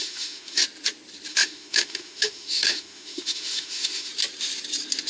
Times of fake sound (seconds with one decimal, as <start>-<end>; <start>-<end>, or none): 0.0-0.6; 1.3-4.1